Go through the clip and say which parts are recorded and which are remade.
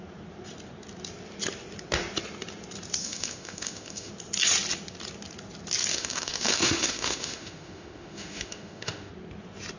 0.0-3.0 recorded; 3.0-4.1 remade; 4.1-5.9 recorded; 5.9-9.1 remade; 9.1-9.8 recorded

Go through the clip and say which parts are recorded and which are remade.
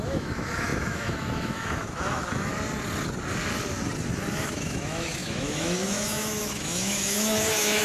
0.0-2.5 remade; 2.5-4.4 recorded; 4.4-7.8 remade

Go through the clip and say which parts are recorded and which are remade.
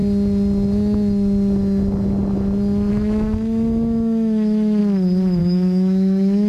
0.0-2.9 recorded; 2.9-4.8 remade; 4.8-5.4 recorded; 5.4-6.5 remade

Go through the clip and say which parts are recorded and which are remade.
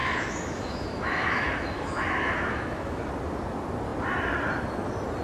0.0-3.1 remade; 3.1-5.2 recorded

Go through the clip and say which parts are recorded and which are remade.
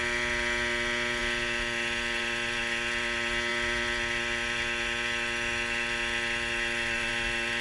0.0-7.6 recorded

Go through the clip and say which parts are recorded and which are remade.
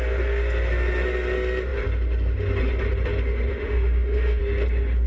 0.0-3.5 recorded; 3.5-4.4 remade; 4.4-5.1 recorded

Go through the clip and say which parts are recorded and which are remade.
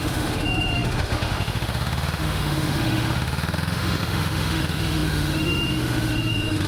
0.0-6.7 remade